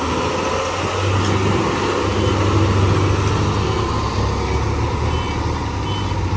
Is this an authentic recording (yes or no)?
yes